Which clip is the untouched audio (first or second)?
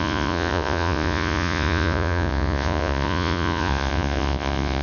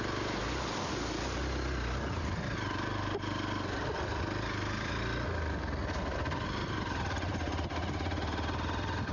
second